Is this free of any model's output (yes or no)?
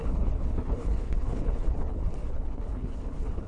no